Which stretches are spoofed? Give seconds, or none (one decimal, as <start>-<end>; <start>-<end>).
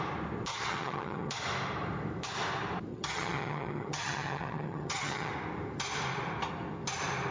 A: 0.5-1.3; 2.9-5.3